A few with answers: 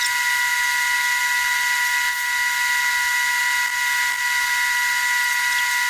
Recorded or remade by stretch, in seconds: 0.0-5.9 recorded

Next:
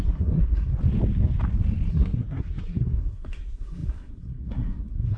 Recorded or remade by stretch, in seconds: 0.0-0.7 remade; 0.7-1.9 recorded; 1.9-5.2 remade

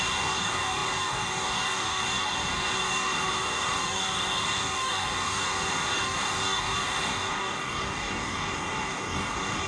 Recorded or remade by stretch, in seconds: 0.0-9.7 remade

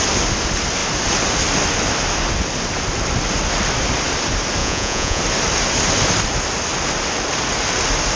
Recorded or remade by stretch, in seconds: 0.0-4.6 recorded; 4.6-5.2 remade; 5.2-8.2 recorded